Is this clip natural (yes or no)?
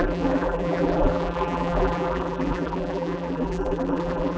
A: no